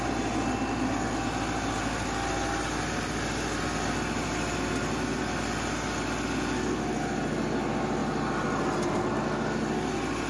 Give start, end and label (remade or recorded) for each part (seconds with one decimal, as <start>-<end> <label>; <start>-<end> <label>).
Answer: 0.0-10.3 recorded